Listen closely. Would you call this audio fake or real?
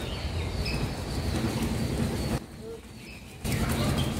real